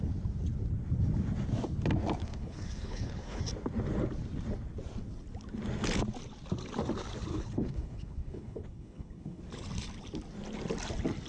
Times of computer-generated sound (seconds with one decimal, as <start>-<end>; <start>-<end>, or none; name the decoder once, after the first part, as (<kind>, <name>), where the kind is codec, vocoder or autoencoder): 2.2-3.4 (codec, HILCodec); 7.3-9.4

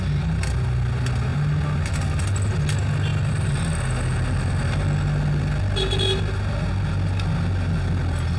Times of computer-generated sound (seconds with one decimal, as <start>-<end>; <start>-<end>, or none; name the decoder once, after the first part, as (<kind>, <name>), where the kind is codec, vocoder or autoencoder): none